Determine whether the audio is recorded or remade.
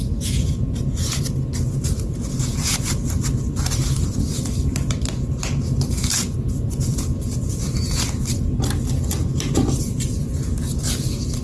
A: remade